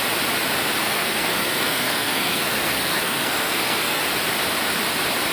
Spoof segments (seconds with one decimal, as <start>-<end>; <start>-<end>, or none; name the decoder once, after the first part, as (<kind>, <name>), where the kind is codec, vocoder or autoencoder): 0.8-4.0 (codec, SNAC)